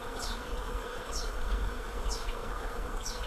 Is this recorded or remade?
remade